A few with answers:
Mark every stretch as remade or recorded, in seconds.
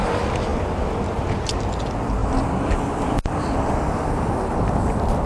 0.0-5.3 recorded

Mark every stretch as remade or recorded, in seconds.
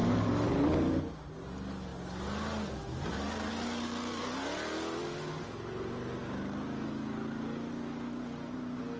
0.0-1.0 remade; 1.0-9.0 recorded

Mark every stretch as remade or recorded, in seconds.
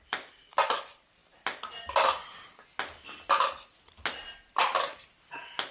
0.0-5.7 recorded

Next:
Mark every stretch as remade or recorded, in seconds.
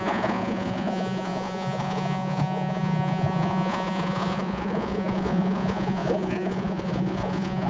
0.0-7.7 remade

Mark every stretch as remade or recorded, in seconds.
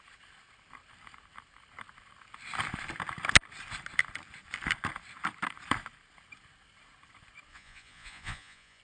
0.0-7.5 recorded; 7.5-8.8 remade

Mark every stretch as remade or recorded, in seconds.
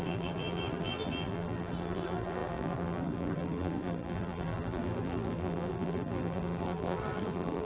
0.0-7.6 remade